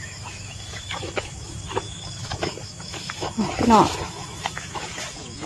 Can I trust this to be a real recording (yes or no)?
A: no